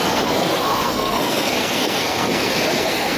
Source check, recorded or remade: remade